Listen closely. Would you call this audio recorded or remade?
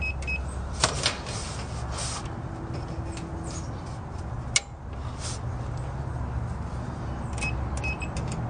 recorded